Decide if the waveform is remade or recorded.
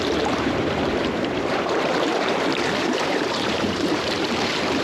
remade